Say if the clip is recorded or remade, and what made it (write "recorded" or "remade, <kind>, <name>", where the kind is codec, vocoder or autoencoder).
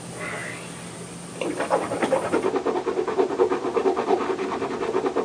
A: recorded